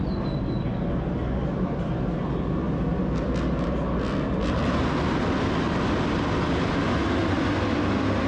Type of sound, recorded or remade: recorded